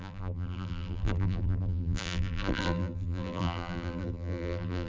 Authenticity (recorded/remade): remade